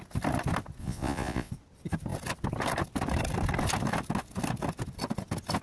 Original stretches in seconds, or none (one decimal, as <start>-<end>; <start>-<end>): 0.0-0.8; 1.5-5.6